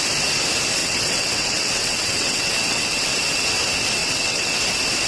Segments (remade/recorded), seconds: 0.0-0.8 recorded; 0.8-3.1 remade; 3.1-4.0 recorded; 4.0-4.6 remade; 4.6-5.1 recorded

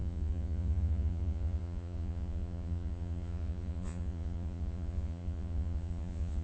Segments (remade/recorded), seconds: 0.0-6.4 remade

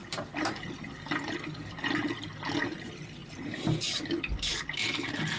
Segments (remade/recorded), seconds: 0.0-5.4 recorded

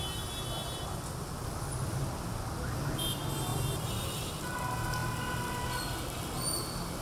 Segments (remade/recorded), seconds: 0.0-0.6 recorded; 0.6-1.4 remade; 1.4-3.5 recorded; 3.5-4.4 remade; 4.4-7.0 recorded